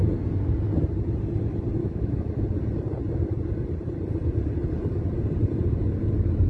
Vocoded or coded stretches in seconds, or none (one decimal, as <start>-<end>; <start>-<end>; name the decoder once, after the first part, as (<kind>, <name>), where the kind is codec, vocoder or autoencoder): 1.8-2.4 (autoencoder, DAC-VAE)